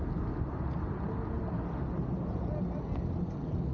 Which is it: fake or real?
real